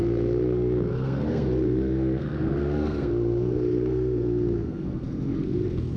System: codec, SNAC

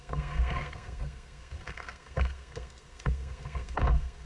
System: codec, SNAC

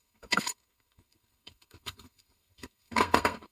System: codec, SNAC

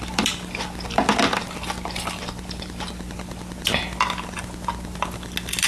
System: none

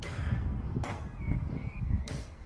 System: codec, SNAC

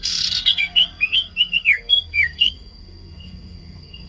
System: codec, SNAC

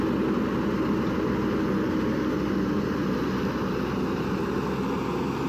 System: none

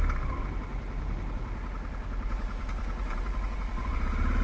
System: none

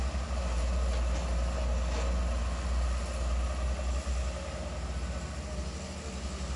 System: none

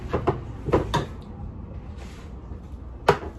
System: none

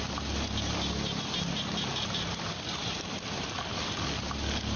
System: none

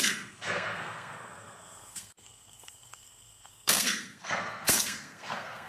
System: codec, SNAC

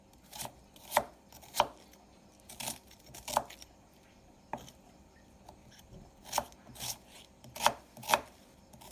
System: none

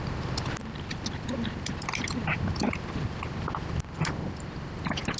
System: none